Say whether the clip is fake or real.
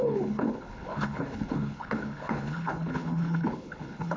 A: fake